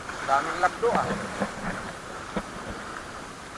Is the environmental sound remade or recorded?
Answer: remade